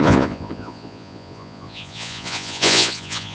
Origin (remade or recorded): remade